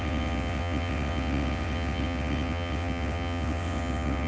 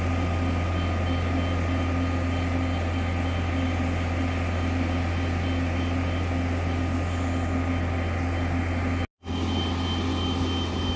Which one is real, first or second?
second